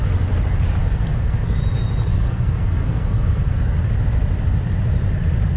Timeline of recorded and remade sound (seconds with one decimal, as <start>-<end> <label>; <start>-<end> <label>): 0.0-0.8 recorded; 0.8-1.6 remade; 1.6-2.1 recorded; 2.1-3.6 remade; 3.6-5.6 recorded